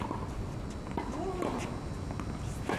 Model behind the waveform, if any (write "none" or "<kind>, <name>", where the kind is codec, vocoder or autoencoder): none